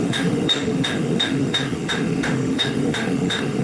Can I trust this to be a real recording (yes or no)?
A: no